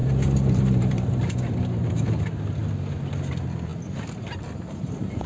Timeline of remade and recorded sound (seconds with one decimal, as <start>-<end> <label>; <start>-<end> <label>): 0.0-2.6 remade; 2.6-3.3 recorded; 3.3-3.7 remade; 3.7-4.3 recorded; 4.3-5.3 remade